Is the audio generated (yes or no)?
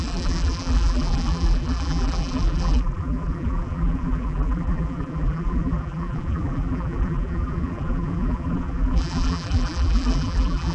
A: yes